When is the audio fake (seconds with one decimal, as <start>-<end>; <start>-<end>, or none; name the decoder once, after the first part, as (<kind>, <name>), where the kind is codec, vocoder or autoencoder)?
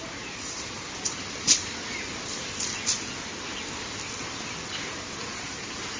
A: 0.0-1.7 (vocoder, BigVGAN v2); 5.3-6.0